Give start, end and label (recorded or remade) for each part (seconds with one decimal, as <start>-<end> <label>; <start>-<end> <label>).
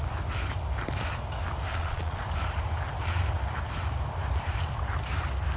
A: 0.0-1.7 recorded; 1.7-2.2 remade; 2.2-5.6 recorded